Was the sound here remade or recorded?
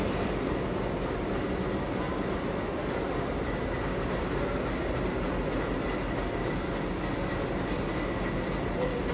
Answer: recorded